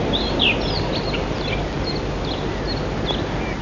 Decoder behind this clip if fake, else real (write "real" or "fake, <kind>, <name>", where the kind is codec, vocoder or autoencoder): real